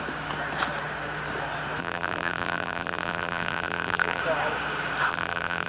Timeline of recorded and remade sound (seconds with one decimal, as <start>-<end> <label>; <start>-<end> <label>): 0.0-1.8 recorded; 1.8-4.2 remade; 4.2-5.1 recorded; 5.1-5.7 remade